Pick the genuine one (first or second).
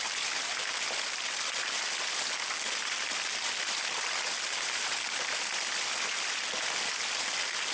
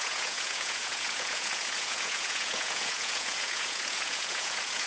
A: first